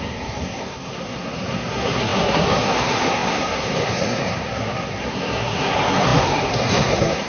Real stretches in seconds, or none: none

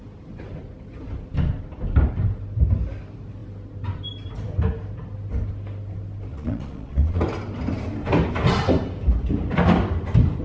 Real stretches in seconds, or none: 0.0-6.3; 7.2-10.4

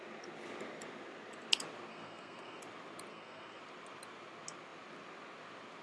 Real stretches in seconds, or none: 0.0-1.9; 2.6-3.1; 3.6-5.8

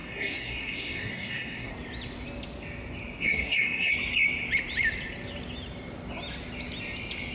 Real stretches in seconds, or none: 1.7-3.2; 3.9-7.3